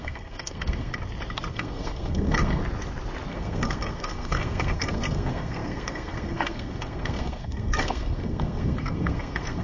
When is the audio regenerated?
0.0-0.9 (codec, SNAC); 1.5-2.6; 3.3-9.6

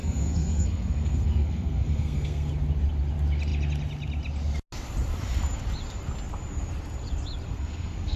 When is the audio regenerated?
0.0-2.5 (codec, SNAC); 7.5-8.2

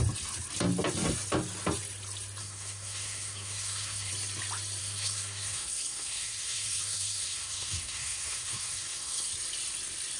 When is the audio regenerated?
2.4-4.1 (codec, SNAC); 4.8-9.3